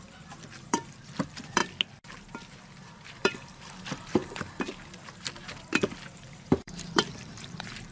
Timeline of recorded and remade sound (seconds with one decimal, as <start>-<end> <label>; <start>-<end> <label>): 0.0-1.6 remade; 1.6-3.2 recorded; 3.2-4.2 remade; 4.2-5.6 recorded; 5.6-7.9 remade